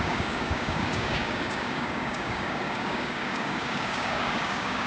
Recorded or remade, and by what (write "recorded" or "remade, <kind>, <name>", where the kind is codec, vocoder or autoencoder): remade, codec, DAC